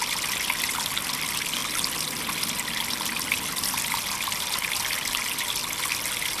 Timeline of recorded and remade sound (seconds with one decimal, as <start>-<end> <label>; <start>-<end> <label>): 0.0-6.4 recorded